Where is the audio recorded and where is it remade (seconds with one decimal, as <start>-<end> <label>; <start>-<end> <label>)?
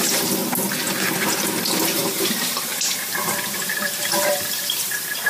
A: 0.0-0.4 remade; 0.4-1.3 recorded; 1.3-5.3 remade